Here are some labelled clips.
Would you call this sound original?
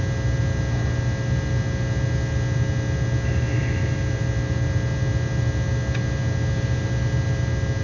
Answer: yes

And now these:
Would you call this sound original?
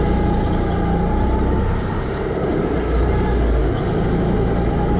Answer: yes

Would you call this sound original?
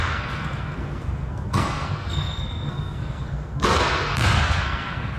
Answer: no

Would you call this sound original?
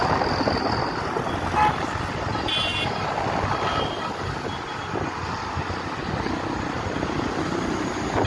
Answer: yes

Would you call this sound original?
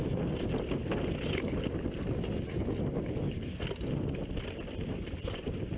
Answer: yes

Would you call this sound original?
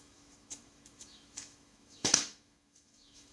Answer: no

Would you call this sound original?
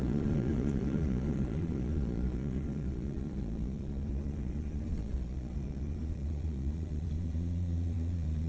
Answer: no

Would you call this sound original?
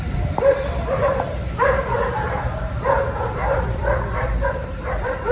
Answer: no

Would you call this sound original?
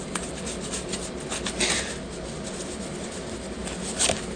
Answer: yes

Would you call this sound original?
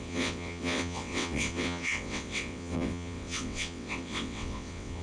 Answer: no